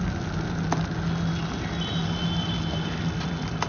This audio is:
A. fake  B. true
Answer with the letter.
B